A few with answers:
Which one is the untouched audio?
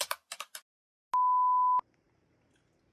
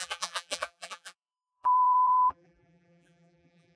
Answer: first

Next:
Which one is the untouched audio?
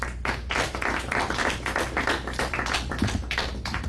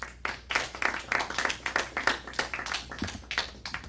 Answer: second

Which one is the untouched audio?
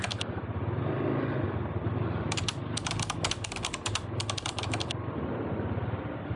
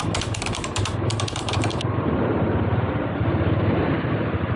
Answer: first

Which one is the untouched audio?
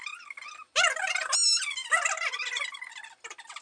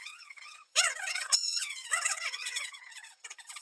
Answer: first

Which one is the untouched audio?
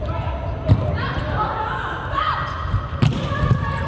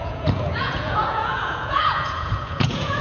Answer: first